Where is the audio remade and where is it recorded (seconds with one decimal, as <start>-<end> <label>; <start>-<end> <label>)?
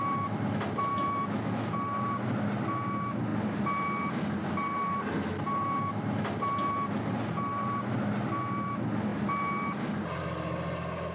0.0-0.9 recorded; 0.9-1.7 remade; 1.7-11.1 recorded